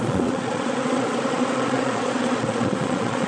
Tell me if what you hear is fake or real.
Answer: fake